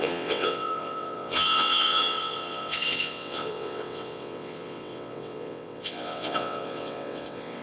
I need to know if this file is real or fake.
fake